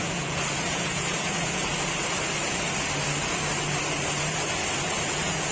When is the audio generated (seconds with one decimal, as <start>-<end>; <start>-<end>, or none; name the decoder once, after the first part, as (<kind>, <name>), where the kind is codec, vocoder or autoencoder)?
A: 0.0-1.7 (vocoder, Vocos); 5.0-5.5